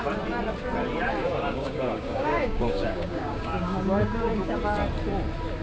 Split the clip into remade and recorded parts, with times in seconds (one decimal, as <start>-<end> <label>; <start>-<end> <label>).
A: 0.0-1.2 recorded; 1.2-4.6 remade; 4.6-5.6 recorded